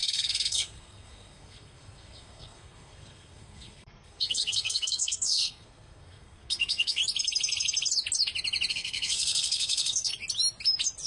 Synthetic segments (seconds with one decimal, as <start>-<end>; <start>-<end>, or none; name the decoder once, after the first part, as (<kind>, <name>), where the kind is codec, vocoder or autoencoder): 0.0-7.0 (codec, SNAC); 8.7-10.1

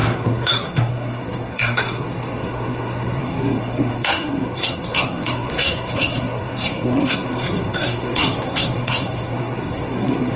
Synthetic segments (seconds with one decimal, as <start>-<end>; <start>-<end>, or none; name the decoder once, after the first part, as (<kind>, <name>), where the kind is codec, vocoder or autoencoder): 0.0-10.4 (codec, SNAC)

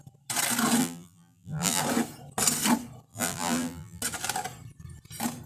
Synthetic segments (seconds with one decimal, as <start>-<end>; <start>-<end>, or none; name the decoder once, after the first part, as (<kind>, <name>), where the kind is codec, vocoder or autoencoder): 0.8-1.8 (vocoder, BigVGAN v2); 3.1-4.0

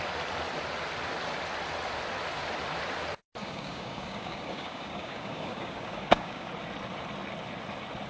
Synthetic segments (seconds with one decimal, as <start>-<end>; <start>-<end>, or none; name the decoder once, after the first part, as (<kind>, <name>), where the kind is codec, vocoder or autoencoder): 3.4-6.5 (codec, DAC)

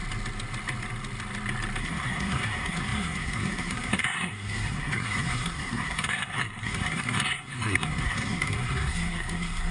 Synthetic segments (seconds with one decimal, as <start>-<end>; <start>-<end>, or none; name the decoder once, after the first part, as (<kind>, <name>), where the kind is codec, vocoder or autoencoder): 1.8-9.7 (codec, SNAC)

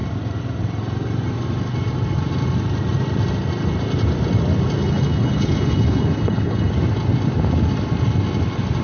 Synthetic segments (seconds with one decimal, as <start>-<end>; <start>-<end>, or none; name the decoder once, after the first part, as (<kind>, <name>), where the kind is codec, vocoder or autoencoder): 4.8-6.7 (codec, HILCodec)